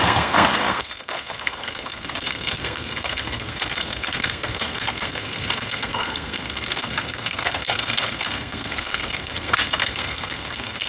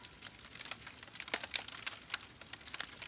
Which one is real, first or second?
second